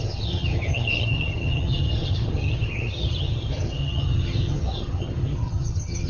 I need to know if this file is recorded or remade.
remade